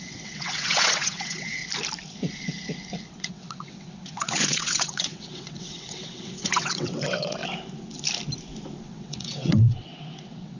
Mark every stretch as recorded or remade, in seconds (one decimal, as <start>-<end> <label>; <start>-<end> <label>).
0.0-1.6 remade; 1.6-3.2 recorded; 3.2-7.4 remade; 7.4-8.8 recorded; 8.8-10.6 remade